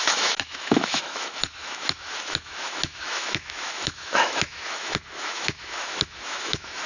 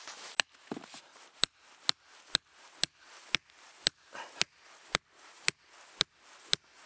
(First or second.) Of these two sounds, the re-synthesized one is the first